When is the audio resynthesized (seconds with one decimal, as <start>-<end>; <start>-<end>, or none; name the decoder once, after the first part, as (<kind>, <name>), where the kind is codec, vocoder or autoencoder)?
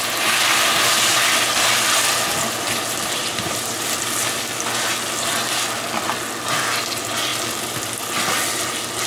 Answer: 3.2-3.7 (vocoder, BigVGAN v2)